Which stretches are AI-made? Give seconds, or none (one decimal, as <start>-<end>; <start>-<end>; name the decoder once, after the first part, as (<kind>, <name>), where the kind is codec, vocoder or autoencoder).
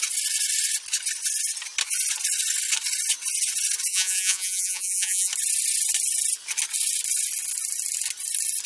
3.9-5.3 (vocoder, Vocos)